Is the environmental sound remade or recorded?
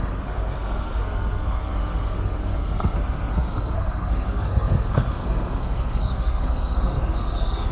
remade